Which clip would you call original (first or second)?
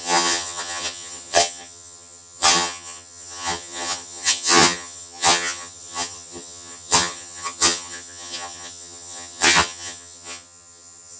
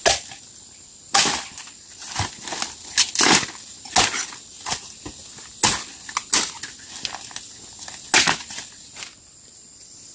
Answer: second